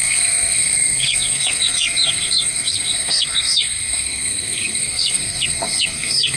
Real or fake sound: fake